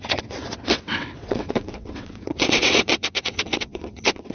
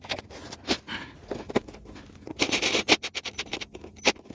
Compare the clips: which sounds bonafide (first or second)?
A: second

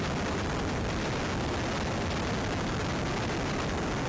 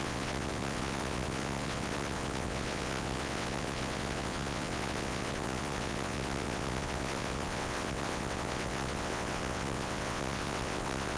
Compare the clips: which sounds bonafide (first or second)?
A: first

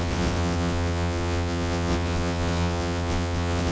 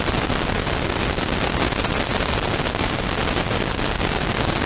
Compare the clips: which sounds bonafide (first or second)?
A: second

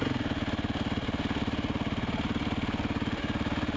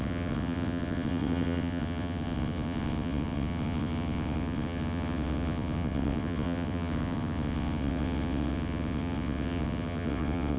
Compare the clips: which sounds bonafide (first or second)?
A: first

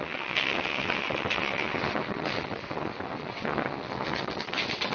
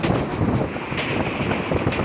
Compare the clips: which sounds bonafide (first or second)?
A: second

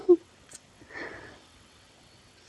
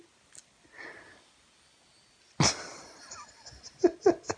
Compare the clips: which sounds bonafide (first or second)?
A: second